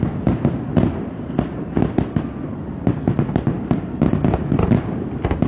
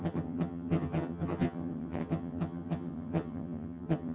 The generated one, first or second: second